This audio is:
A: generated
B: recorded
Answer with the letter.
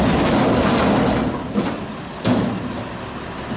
B